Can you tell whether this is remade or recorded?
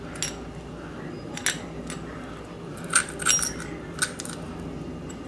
recorded